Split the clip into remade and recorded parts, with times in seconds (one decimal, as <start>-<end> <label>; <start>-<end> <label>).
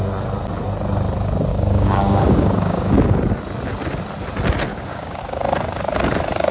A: 0.0-1.5 recorded; 1.5-3.2 remade; 3.2-4.7 recorded; 4.7-5.2 remade; 5.2-6.5 recorded